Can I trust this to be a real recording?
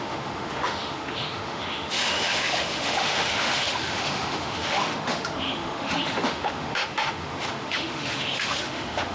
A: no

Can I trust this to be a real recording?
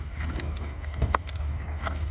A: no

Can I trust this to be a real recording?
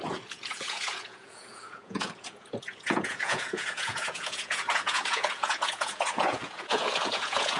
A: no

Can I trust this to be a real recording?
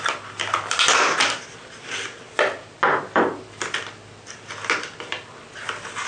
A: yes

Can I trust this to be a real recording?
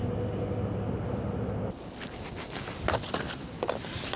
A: yes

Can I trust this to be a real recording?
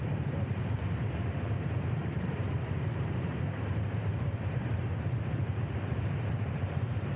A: no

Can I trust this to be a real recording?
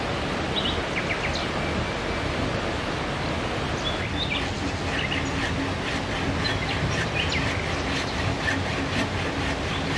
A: yes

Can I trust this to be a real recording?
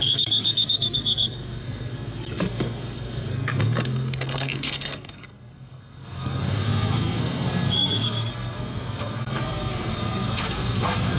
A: no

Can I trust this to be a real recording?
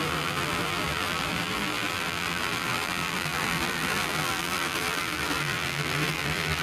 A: no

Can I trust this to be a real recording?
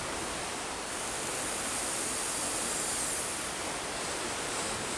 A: yes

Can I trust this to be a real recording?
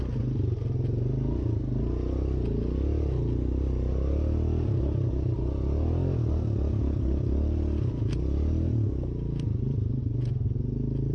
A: yes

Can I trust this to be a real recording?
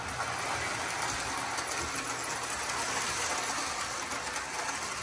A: yes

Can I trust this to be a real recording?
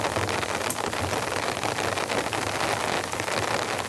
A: yes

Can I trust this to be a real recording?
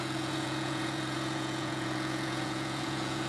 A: no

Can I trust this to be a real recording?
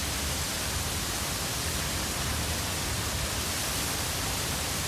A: yes